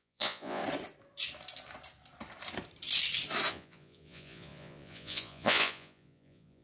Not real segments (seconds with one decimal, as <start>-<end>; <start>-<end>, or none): 0.0-0.6; 3.5-6.6